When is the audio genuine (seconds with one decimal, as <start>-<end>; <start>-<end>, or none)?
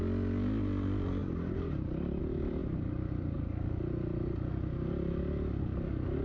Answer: 0.0-1.2; 2.2-6.2